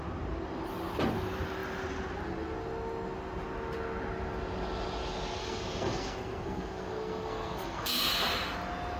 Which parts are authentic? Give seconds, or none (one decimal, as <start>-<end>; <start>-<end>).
0.0-5.4; 8.0-9.0

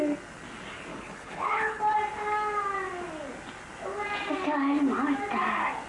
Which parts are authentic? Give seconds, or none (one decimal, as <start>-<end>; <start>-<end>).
0.0-0.9; 1.8-5.9

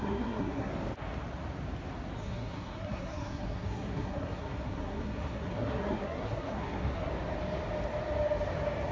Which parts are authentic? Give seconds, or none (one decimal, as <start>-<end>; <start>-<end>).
0.7-2.2; 7.1-8.9

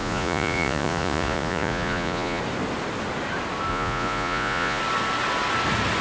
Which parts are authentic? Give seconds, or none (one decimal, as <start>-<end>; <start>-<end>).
2.4-3.7; 4.8-6.0

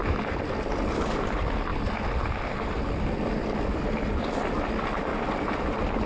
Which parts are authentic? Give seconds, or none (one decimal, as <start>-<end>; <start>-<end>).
0.0-6.1

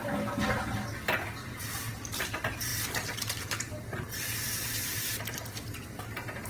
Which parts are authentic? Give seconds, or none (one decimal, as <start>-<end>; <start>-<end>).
0.0-6.5